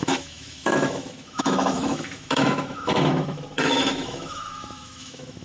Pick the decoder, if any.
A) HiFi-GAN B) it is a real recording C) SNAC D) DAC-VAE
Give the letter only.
D